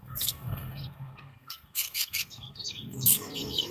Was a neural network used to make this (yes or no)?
yes